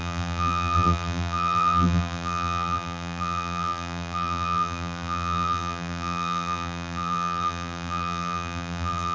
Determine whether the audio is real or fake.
fake